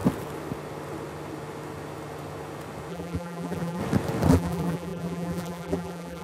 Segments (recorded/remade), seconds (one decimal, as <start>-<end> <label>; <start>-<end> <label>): 0.0-2.9 recorded; 2.9-3.8 remade; 3.8-4.3 recorded; 4.3-6.2 remade